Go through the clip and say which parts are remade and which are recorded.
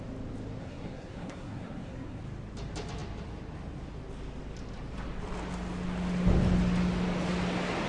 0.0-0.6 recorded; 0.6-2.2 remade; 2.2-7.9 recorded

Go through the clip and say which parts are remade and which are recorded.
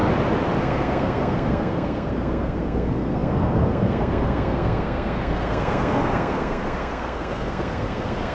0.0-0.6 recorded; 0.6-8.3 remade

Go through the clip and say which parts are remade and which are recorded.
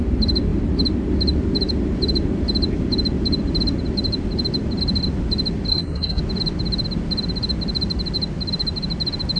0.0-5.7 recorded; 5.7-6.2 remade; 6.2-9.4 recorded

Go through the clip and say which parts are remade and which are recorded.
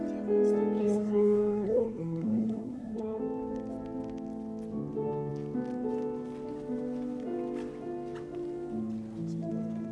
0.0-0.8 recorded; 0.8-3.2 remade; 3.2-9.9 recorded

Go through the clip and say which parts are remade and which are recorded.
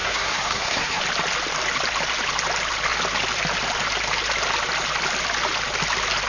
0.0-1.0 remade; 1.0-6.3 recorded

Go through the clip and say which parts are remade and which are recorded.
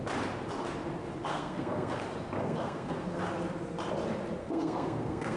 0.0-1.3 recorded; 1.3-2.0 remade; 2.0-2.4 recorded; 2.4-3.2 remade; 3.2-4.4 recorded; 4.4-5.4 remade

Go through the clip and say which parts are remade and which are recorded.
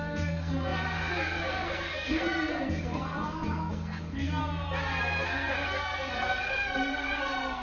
0.0-4.4 remade; 4.4-5.0 recorded; 5.0-7.6 remade